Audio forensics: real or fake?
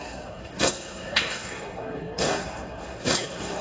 fake